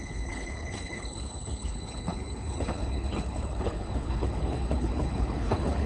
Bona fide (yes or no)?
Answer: no